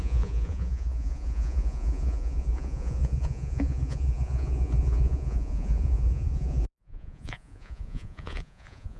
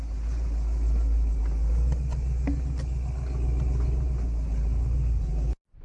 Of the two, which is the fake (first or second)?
first